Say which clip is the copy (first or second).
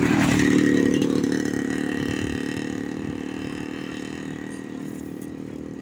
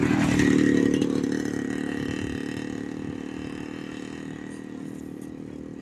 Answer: first